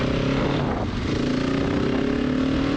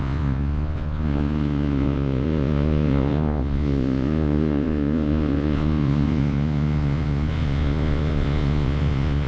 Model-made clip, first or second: second